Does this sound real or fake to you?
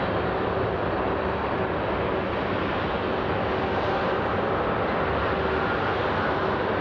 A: real